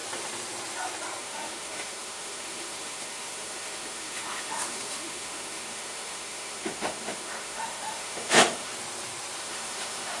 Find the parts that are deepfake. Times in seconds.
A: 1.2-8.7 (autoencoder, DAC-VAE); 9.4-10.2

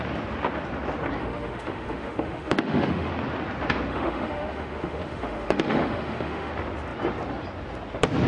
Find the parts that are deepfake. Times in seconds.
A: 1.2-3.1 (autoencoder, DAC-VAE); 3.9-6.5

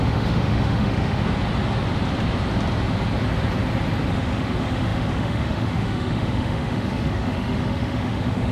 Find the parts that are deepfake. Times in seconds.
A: 0.0-1.2 (autoencoder, DAC-VAE); 4.1-8.5

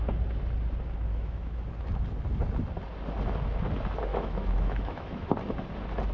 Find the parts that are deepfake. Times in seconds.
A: 1.1-1.6 (autoencoder, DAC-VAE); 4.1-5.3

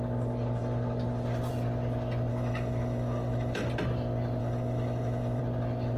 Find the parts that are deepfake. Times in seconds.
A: 2.3-3.7 (autoencoder, DAC-VAE); 4.4-5.4

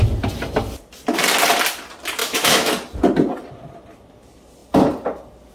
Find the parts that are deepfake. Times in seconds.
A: 2.2-2.7 (autoencoder, DAC-VAE)

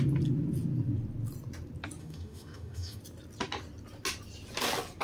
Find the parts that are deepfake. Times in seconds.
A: 2.0-3.0 (autoencoder, DAC-VAE)

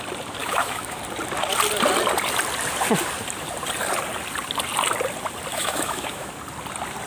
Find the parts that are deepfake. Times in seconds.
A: 0.4-1.0 (autoencoder, DAC-VAE); 5.5-6.3